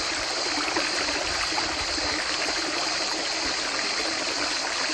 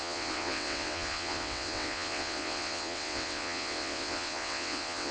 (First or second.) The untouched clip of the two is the first